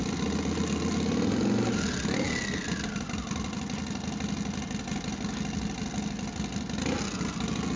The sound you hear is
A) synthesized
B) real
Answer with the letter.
B